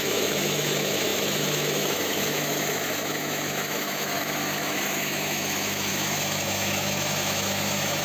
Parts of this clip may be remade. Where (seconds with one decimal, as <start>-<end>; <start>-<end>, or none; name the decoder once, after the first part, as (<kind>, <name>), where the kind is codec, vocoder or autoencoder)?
0.0-8.0 (autoencoder, DAC-VAE)